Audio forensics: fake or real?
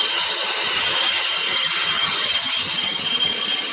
fake